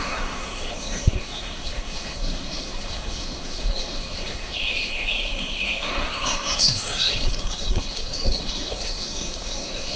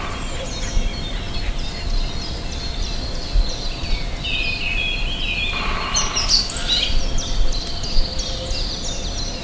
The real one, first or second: second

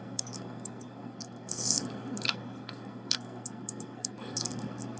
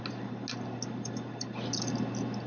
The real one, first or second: second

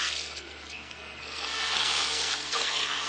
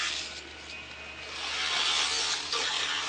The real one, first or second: second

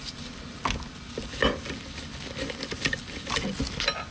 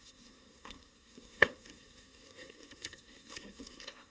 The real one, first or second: first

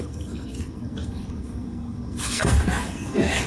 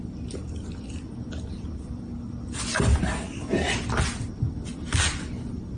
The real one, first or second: second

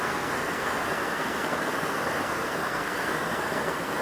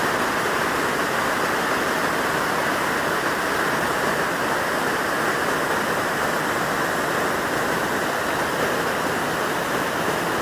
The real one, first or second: second